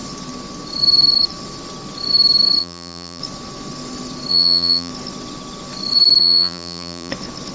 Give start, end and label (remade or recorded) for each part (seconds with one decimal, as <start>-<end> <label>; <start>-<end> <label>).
0.0-2.6 recorded; 2.6-3.2 remade; 3.2-4.3 recorded; 4.3-4.9 remade; 4.9-6.2 recorded; 6.2-7.1 remade; 7.1-7.5 recorded